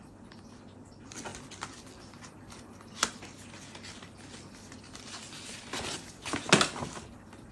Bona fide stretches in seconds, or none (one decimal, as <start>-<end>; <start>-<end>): 0.0-7.5